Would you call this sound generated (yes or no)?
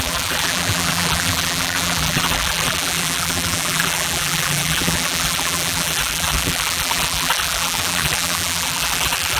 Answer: yes